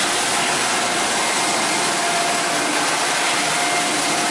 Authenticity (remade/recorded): recorded